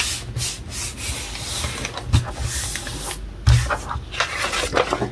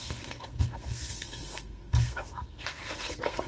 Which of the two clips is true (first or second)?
first